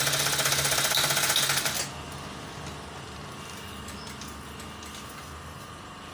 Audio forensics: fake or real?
real